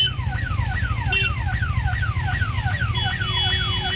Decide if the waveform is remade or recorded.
recorded